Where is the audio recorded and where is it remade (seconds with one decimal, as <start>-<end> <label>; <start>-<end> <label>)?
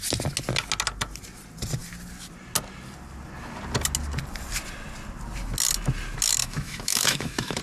0.0-6.4 recorded; 6.4-7.6 remade